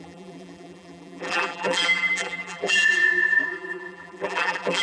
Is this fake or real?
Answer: fake